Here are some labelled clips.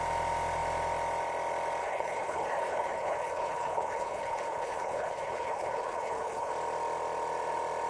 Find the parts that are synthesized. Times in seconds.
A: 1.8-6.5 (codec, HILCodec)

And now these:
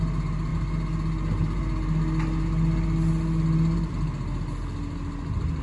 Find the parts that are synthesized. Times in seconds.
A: none

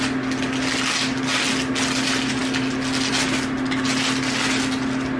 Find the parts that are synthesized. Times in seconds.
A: none